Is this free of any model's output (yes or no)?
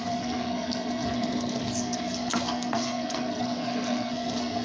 no